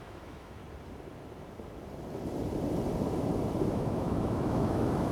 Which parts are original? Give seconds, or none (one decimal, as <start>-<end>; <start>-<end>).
0.6-3.7